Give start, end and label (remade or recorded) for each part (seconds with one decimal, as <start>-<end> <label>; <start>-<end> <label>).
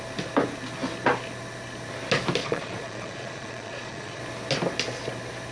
0.0-2.4 recorded; 2.4-4.2 remade; 4.2-5.5 recorded